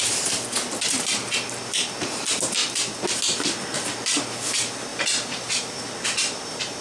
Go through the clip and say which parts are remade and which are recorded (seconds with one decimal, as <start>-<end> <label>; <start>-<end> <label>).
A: 0.0-2.6 recorded; 2.6-3.2 remade; 3.2-4.9 recorded; 4.9-6.8 remade